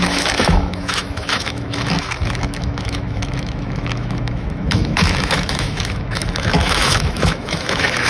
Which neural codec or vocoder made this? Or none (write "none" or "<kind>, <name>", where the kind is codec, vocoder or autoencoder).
autoencoder, DAC-VAE